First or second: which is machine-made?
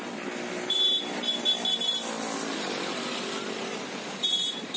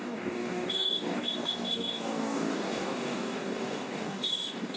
second